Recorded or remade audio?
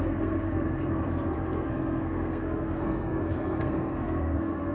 remade